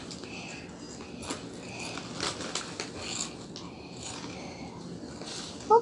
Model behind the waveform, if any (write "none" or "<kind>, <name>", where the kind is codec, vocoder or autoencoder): none